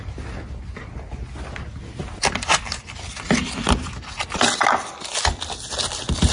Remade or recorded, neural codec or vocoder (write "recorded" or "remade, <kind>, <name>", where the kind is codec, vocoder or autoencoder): recorded